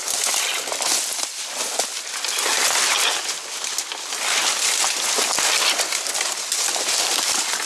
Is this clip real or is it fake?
real